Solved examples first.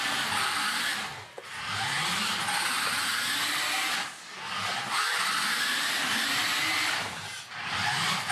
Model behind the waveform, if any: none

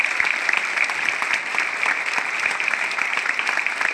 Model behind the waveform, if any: vocoder, BigVGAN v2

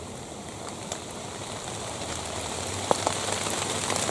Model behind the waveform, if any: none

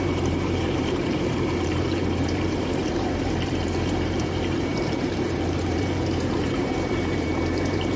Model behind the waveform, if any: vocoder, BigVGAN v2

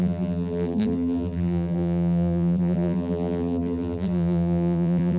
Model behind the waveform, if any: vocoder, BigVGAN v2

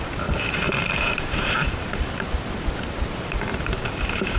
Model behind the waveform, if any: vocoder, BigVGAN v2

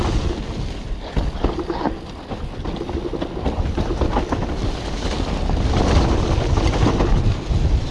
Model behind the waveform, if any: none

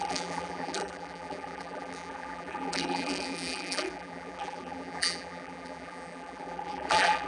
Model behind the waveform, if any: vocoder, BigVGAN v2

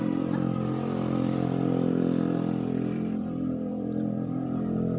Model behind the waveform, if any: vocoder, BigVGAN v2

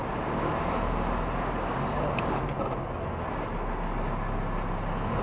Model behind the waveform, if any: none